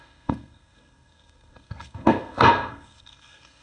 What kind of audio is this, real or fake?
fake